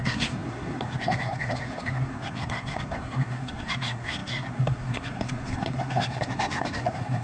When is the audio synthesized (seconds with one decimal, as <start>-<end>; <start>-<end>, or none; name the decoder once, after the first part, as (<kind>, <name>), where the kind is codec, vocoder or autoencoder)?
0.0-7.2 (codec, SNAC)